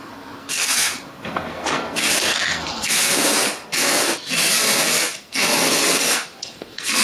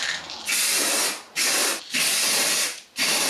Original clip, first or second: second